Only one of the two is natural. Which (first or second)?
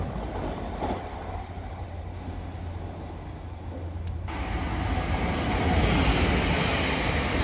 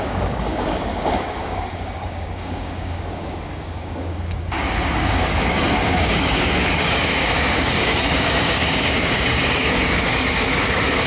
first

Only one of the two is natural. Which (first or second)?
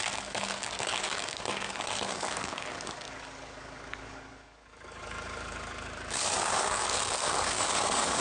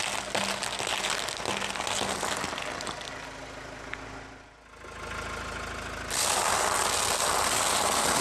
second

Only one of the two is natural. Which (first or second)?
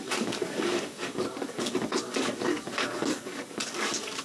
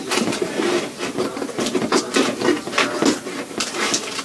second